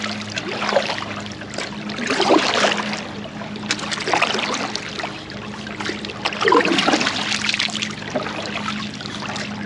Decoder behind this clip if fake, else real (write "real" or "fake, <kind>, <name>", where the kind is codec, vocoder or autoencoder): real